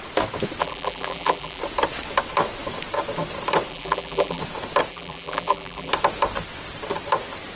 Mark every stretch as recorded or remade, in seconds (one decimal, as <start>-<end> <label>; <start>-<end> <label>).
0.0-0.6 recorded; 0.6-1.6 remade; 1.6-3.7 recorded; 3.7-4.4 remade; 4.4-4.9 recorded; 4.9-5.9 remade; 5.9-7.6 recorded